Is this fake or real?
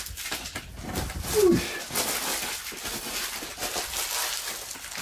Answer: real